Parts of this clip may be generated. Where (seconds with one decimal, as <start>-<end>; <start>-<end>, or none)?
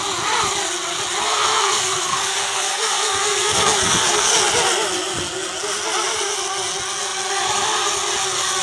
1.2-4.3